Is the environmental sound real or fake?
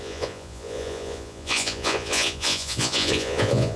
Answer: fake